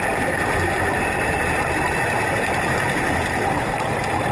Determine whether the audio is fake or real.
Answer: real